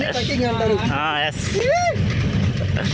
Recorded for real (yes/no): yes